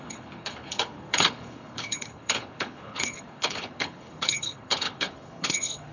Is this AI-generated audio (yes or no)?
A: yes